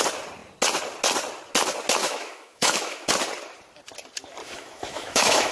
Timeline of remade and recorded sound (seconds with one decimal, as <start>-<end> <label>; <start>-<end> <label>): 0.0-2.0 recorded; 2.0-3.1 remade; 3.1-4.4 recorded; 4.4-5.5 remade